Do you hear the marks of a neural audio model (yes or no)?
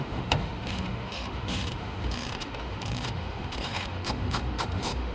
yes